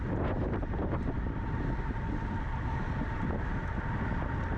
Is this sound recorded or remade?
recorded